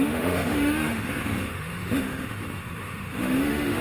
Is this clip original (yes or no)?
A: no